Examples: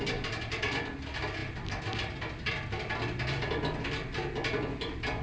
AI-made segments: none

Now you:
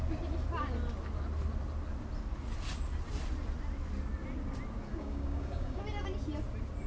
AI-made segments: 4.9-5.8 (codec, DAC)

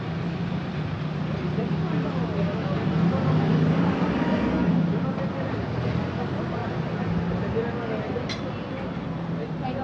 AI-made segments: 3.5-4.7 (codec, DAC)

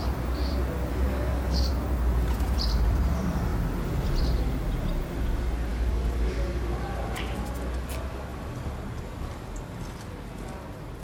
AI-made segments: 0.9-1.7 (codec, DAC); 5.7-6.6

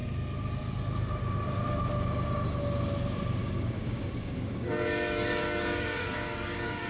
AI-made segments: 3.4-6.9 (codec, DAC)

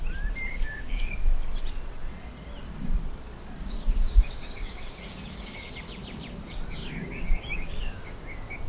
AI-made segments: 0.5-1.2 (codec, DAC); 3.6-5.7; 6.8-8.2

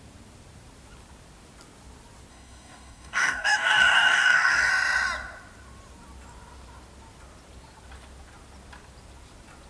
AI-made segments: 2.3-4.7 (codec, DAC)